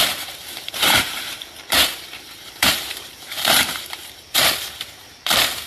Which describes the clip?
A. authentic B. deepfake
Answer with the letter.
B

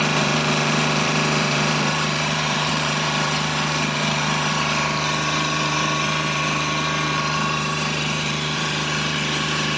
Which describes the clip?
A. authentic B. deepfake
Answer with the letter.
B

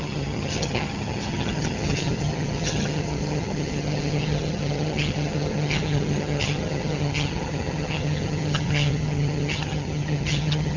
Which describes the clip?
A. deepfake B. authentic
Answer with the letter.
A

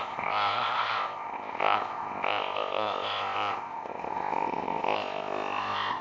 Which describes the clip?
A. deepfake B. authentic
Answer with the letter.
A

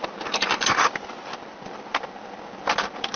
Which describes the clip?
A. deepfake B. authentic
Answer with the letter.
B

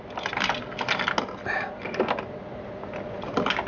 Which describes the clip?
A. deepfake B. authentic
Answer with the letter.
B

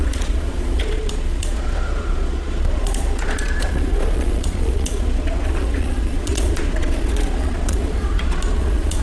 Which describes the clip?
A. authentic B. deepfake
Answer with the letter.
B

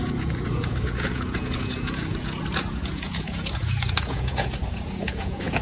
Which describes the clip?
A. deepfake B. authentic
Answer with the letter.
A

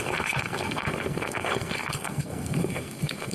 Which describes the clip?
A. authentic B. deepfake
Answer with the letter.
B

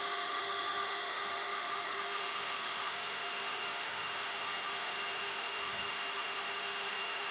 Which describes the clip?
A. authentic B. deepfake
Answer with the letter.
B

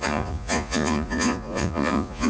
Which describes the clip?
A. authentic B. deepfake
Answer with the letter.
B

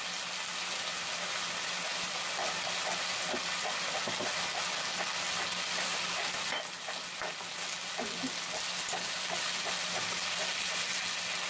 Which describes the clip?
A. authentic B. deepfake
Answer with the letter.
A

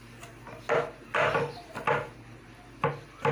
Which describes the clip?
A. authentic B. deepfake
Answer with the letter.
A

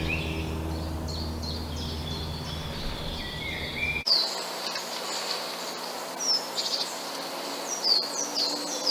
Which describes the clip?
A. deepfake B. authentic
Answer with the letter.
B